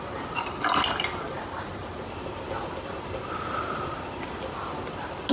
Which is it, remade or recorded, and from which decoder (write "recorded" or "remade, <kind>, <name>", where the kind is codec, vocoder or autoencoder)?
recorded